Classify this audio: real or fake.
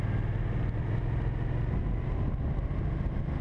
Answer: real